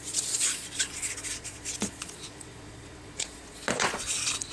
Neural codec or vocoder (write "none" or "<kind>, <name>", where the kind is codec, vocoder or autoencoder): vocoder, Vocos